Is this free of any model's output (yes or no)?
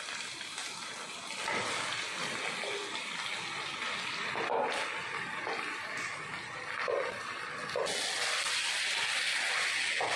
yes